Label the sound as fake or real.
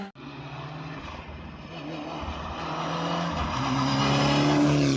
real